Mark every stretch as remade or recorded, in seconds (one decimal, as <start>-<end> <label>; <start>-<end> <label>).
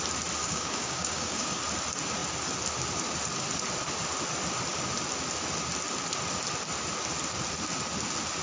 0.0-0.4 recorded; 0.4-1.6 remade; 1.6-8.4 recorded